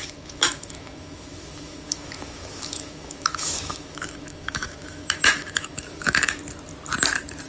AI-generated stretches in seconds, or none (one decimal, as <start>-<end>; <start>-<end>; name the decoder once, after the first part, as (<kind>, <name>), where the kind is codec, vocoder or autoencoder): 0.0-6.4 (autoencoder, DAC-VAE)